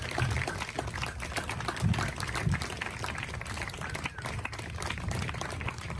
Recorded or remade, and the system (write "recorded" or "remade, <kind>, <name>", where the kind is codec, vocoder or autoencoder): recorded